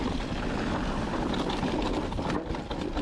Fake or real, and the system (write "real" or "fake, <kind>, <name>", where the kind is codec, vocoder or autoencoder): real